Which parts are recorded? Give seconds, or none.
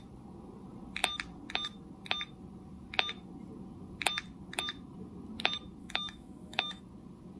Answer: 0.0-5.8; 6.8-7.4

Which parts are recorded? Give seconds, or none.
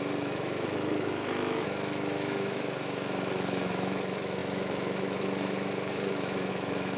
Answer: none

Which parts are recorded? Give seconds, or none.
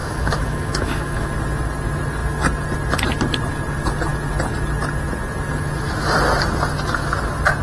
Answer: 1.3-7.6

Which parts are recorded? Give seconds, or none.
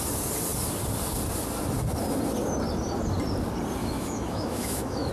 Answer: 0.0-3.8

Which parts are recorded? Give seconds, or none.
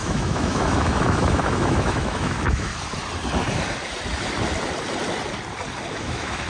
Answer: 2.7-5.9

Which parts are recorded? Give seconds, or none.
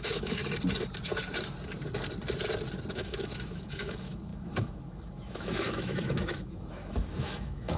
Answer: 0.4-2.9